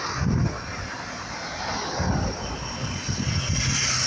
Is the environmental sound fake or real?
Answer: real